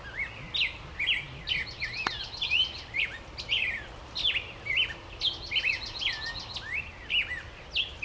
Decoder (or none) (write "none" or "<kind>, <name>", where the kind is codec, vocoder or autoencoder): none